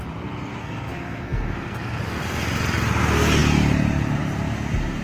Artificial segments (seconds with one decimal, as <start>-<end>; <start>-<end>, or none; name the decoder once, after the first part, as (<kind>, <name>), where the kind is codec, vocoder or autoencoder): 0.6-2.0 (codec, SNAC)